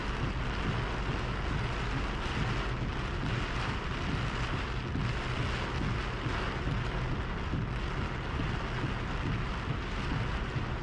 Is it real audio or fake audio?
real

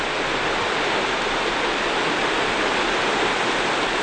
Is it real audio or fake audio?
real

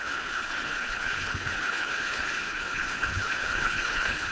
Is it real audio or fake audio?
fake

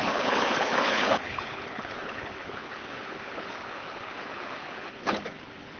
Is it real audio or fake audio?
fake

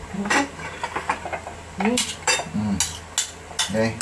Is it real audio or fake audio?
real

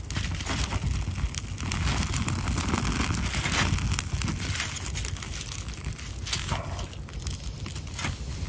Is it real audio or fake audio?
real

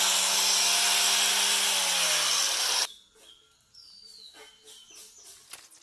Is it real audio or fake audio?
real